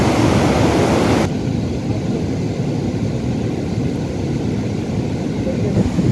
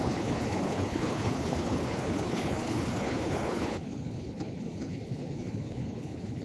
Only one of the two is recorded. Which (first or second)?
first